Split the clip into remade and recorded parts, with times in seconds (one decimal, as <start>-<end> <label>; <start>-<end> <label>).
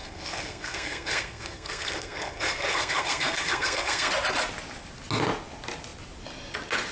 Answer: 0.0-4.1 remade; 4.1-6.9 recorded